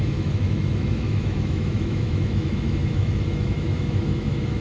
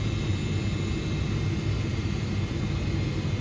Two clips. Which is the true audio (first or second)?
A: second